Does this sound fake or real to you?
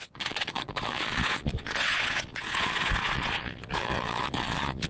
fake